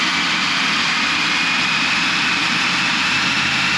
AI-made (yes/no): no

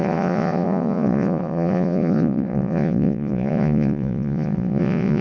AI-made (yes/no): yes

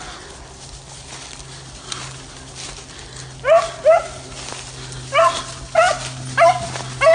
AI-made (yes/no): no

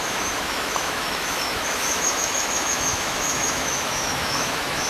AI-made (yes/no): yes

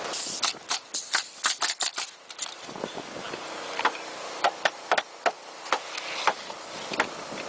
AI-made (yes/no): no